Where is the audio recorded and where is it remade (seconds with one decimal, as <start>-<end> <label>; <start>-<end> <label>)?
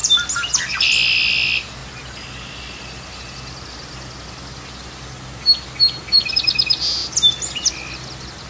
0.0-8.5 recorded